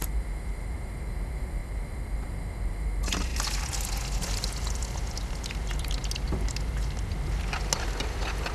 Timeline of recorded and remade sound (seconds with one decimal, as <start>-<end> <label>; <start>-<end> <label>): 0.0-8.5 recorded